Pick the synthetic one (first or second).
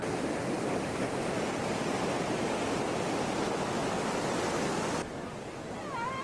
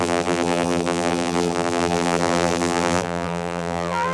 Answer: second